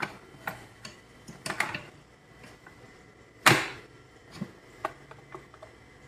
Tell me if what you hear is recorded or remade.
recorded